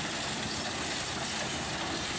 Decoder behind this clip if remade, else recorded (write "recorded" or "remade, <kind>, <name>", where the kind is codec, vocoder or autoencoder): recorded